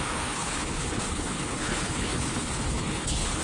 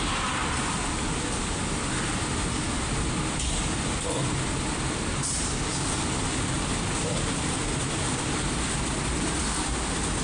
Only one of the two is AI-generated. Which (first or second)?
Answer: first